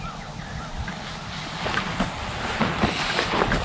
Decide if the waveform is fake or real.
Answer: real